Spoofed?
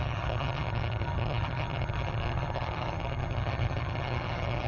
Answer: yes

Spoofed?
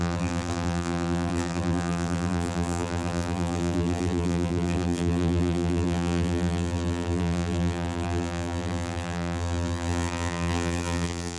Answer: yes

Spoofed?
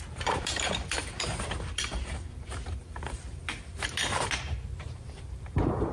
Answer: yes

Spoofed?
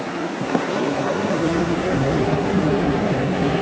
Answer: yes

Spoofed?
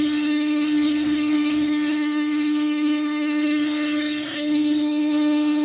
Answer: yes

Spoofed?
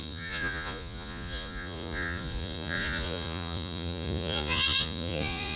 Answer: yes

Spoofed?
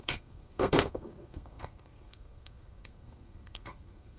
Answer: yes